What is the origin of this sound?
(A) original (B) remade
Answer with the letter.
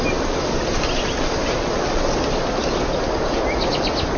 A